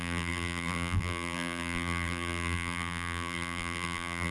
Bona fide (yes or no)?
no